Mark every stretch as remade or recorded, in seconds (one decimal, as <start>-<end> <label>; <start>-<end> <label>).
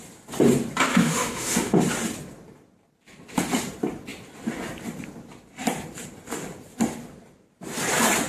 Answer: 0.0-0.9 recorded; 0.9-1.8 remade; 1.8-8.3 recorded